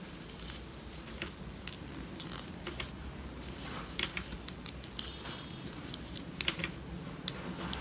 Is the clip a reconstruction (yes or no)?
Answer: no